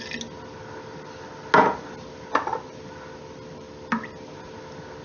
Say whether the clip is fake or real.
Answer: real